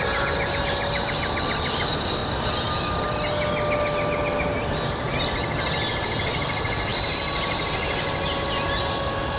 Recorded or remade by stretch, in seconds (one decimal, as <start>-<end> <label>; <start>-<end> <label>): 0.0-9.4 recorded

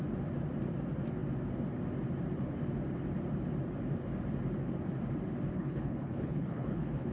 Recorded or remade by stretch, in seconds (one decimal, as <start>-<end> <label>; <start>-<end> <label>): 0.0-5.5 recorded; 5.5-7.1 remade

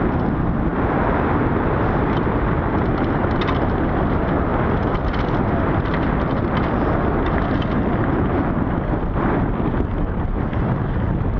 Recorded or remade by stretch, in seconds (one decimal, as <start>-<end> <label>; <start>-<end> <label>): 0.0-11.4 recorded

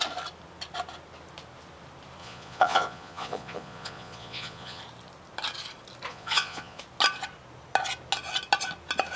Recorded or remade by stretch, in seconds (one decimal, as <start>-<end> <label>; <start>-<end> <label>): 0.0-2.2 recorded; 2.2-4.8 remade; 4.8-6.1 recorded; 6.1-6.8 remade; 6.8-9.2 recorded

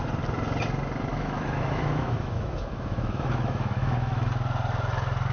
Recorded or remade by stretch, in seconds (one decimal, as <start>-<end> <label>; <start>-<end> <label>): 0.0-1.1 recorded; 1.1-4.3 remade; 4.3-5.3 recorded